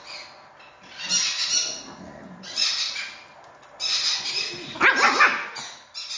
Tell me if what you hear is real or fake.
real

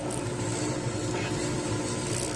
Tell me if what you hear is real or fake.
real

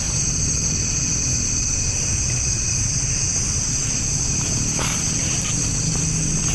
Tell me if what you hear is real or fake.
real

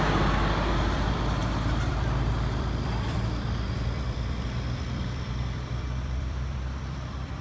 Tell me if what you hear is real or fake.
fake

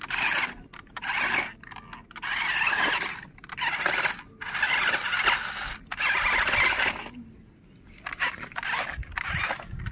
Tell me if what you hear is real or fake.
real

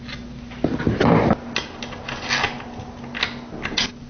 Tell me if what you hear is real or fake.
real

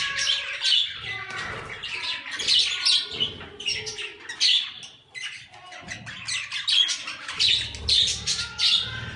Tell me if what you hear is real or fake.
real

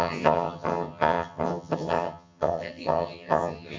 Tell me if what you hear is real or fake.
fake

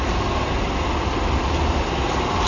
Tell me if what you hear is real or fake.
real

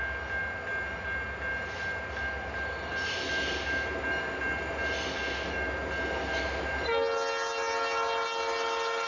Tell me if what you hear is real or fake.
real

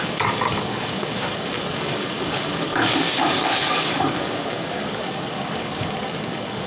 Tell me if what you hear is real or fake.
fake